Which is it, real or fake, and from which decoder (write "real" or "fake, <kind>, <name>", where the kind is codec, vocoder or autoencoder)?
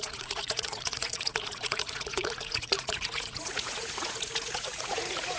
fake, vocoder, Vocos